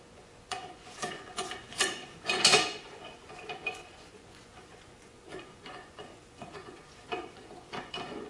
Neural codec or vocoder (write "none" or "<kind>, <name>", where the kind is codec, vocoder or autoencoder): vocoder, Vocos